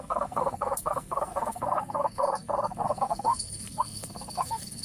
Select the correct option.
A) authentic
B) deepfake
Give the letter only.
B